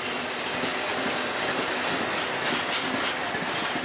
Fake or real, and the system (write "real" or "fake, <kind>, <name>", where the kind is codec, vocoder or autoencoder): real